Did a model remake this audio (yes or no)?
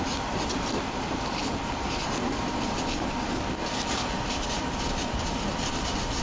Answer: yes